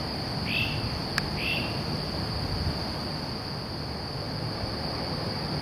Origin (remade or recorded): recorded